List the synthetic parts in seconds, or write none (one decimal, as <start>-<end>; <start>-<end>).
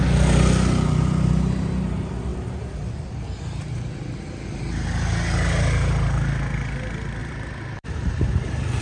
2.3-3.1; 7.2-8.8